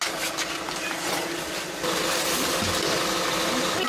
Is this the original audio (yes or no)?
yes